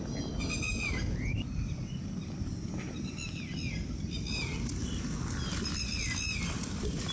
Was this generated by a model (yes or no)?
no